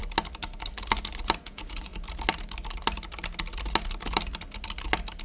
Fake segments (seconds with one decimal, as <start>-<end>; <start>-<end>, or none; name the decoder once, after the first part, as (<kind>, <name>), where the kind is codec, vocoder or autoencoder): 1.4-1.9 (vocoder, Vocos)